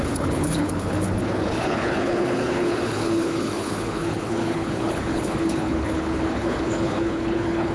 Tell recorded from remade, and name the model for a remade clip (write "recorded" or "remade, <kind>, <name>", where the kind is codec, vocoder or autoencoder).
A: remade, codec, HILCodec